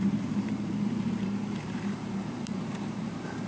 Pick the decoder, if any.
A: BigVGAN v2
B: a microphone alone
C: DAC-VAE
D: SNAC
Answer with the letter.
A